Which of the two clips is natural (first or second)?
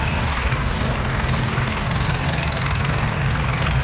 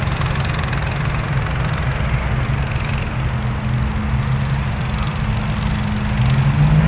second